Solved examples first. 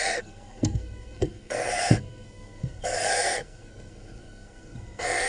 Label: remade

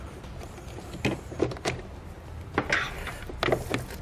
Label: recorded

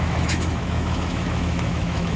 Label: remade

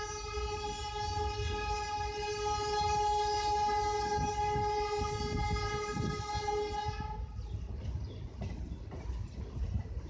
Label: recorded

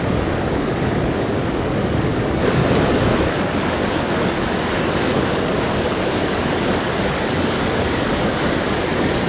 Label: remade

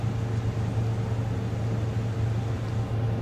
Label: recorded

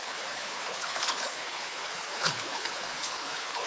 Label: remade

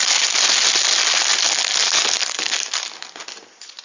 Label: recorded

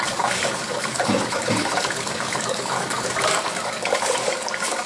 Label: remade